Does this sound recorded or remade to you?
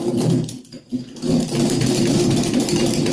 remade